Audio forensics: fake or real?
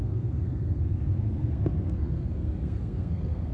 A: fake